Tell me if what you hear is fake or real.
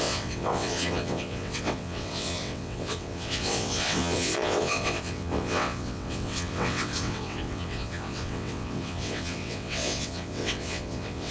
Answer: fake